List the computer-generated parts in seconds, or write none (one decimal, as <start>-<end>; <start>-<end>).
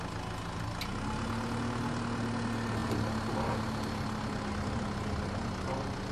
none